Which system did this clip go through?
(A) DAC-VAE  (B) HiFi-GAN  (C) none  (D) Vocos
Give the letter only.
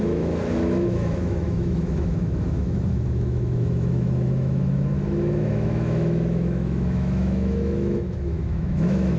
A